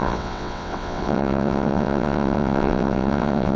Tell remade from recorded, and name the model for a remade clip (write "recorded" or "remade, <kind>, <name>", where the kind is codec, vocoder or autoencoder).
remade, vocoder, WaveNeXt